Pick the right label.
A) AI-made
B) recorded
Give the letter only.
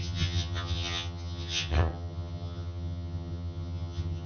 A